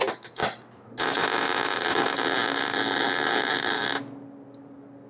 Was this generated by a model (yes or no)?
no